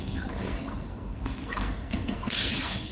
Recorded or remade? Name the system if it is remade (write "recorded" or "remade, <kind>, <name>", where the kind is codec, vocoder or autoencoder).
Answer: remade, codec, SNAC